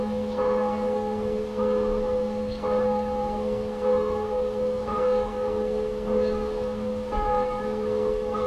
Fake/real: fake